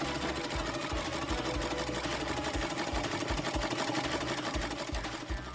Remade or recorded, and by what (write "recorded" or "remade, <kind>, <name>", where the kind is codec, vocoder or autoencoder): recorded